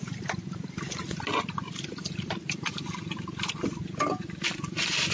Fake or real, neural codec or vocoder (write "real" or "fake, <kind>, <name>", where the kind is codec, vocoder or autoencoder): real